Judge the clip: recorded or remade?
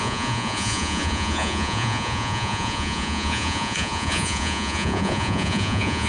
remade